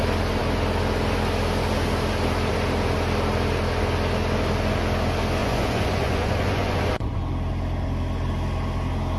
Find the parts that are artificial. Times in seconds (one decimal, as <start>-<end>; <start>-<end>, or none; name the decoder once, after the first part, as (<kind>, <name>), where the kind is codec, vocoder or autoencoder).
5.4-7.2 (vocoder, Vocos)